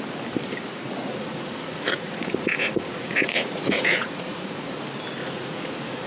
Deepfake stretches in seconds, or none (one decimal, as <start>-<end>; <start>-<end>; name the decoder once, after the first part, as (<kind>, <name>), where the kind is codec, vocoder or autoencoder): 1.1-4.8 (vocoder, Vocos); 5.2-6.1